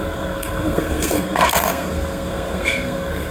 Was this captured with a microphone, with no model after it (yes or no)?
no